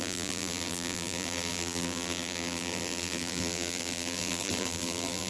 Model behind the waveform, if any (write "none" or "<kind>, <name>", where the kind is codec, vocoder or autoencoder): vocoder, BigVGAN v2